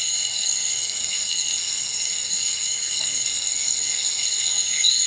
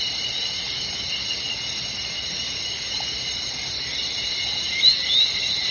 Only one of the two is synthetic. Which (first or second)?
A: first